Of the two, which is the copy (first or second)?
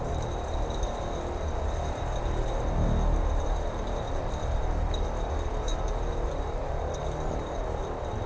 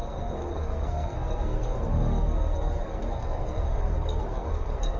second